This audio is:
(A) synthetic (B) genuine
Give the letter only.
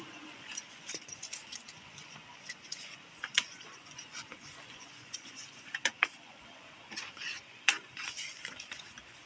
A